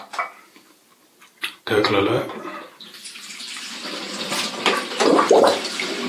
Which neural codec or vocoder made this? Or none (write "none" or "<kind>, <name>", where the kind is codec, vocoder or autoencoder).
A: vocoder, BigVGAN v2